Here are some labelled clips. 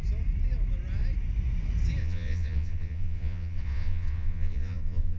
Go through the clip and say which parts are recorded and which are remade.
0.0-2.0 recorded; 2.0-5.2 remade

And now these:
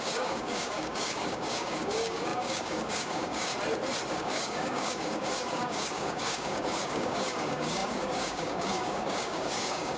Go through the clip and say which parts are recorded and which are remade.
0.0-3.5 remade; 3.5-4.1 recorded; 4.1-10.0 remade

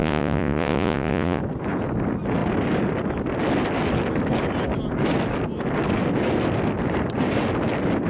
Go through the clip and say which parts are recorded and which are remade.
0.0-1.4 remade; 1.4-8.1 recorded

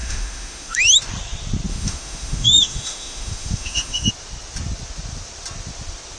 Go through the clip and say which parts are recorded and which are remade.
0.0-0.8 remade; 0.8-1.7 recorded; 1.7-4.1 remade; 4.1-6.2 recorded

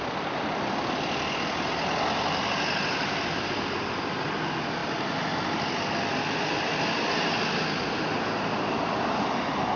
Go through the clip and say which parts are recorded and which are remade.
0.0-9.8 recorded